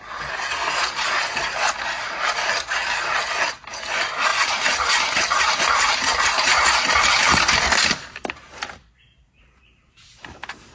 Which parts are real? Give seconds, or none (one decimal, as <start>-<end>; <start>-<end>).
0.0-10.7